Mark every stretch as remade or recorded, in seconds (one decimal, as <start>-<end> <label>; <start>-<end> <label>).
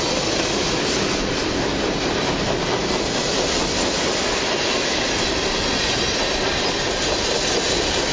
0.0-8.1 recorded